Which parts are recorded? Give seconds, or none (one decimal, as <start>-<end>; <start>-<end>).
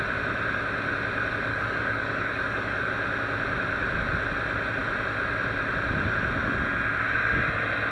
0.0-1.5; 2.9-7.9